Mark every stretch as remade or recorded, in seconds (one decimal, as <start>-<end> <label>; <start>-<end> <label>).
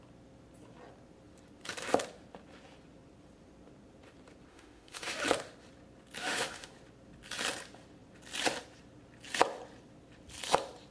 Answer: 0.0-4.5 recorded; 4.5-5.2 remade; 5.2-6.2 recorded; 6.2-6.7 remade; 6.7-10.9 recorded